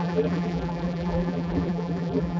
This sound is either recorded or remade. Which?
remade